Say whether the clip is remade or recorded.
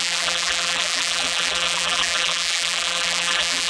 remade